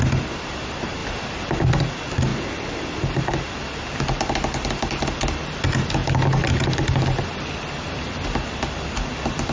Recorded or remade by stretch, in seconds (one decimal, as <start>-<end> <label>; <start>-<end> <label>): 0.0-9.5 recorded